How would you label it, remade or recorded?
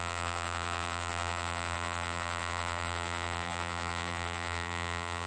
remade